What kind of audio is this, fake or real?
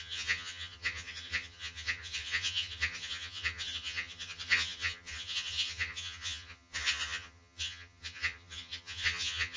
fake